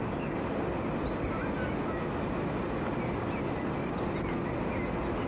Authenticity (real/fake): real